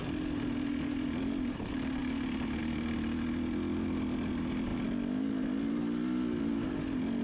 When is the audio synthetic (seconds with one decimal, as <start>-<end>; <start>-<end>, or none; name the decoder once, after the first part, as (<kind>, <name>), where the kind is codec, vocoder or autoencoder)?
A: none